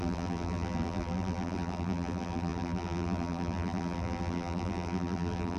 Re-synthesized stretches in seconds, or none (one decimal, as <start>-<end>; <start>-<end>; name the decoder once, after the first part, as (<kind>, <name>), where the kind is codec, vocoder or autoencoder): 0.0-5.6 (vocoder, BigVGAN v2)